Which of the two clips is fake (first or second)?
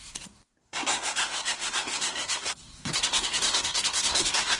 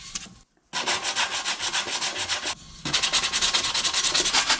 first